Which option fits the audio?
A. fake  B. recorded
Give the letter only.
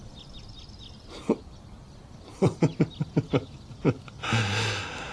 B